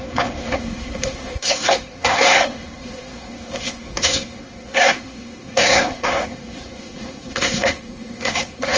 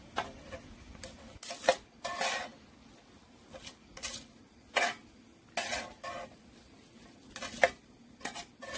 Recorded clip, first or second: second